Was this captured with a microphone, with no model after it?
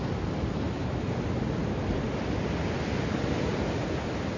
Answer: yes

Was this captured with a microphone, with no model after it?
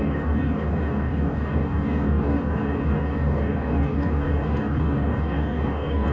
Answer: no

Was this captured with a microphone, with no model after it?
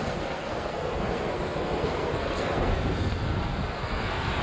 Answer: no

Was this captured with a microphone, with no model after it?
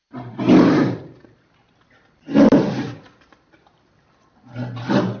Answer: yes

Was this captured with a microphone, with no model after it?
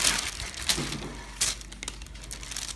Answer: yes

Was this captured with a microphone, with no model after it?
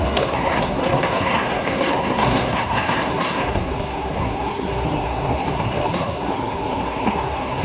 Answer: no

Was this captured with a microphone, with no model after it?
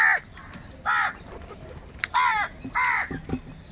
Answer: yes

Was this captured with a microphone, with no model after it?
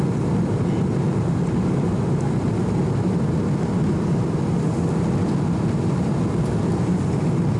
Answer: yes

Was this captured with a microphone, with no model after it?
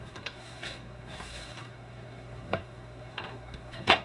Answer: no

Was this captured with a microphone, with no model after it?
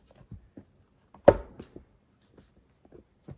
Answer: yes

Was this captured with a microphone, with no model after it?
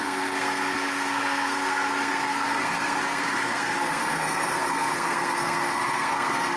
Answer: no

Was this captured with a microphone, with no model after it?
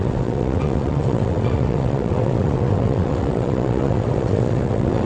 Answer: no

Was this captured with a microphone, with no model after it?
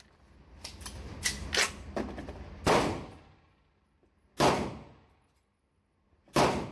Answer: yes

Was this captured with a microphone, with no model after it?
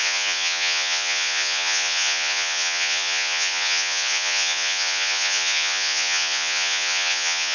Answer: no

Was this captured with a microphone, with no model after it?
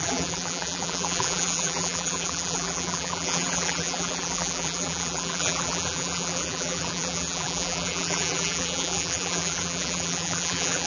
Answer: no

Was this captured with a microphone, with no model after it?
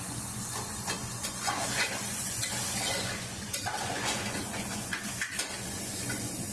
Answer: no